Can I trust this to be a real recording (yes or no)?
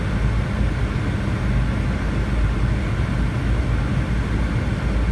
yes